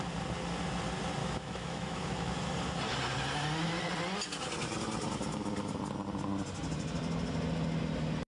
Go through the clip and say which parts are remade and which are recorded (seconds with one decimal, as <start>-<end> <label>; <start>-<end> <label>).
0.0-1.2 recorded; 1.2-2.3 remade; 2.3-8.3 recorded